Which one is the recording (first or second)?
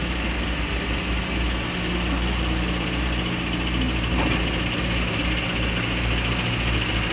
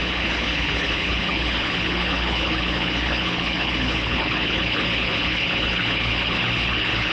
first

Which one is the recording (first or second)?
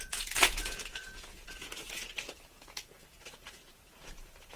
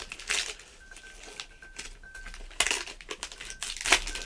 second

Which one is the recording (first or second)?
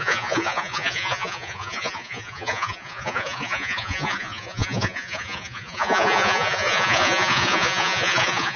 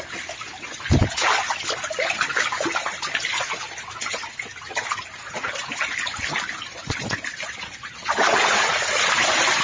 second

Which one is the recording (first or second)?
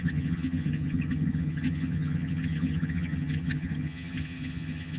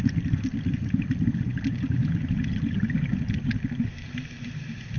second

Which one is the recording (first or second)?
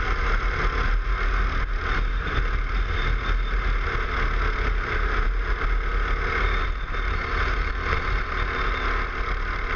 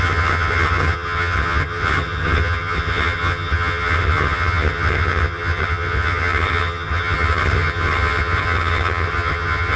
first